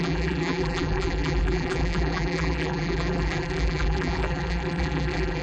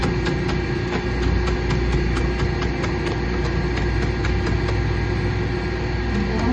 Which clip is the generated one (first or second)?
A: first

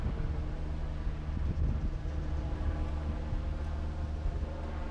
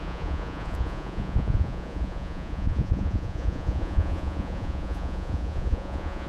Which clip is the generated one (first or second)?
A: second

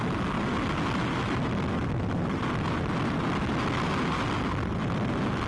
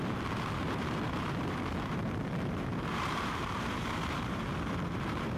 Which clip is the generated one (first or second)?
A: second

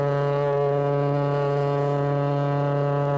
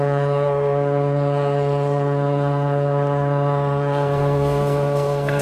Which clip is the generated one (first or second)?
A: second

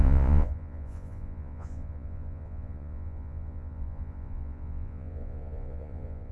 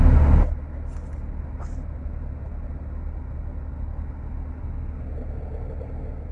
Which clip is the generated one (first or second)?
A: first